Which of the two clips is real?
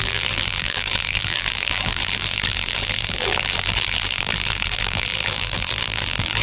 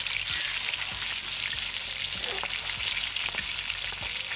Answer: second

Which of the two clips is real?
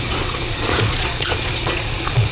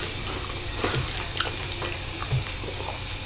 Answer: second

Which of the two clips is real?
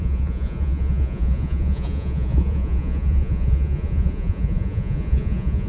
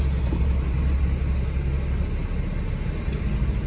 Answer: second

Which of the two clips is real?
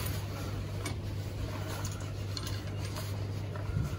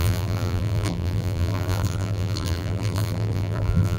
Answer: first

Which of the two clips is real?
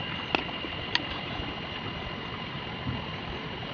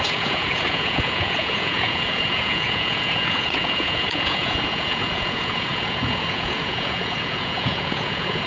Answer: first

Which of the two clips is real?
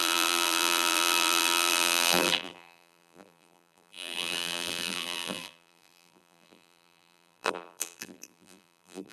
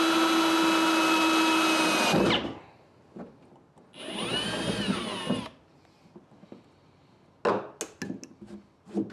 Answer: second